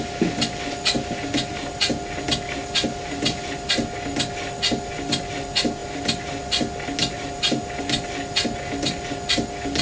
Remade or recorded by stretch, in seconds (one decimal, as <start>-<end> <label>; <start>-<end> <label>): 0.0-9.8 recorded